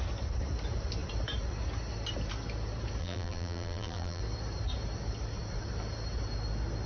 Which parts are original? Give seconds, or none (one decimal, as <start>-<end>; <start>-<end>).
0.0-3.0; 4.2-6.9

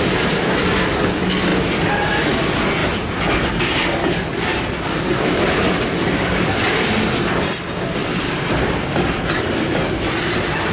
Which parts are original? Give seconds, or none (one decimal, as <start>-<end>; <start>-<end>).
0.0-4.0; 6.8-10.7